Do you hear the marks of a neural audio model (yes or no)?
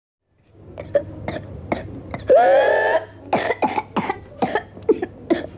no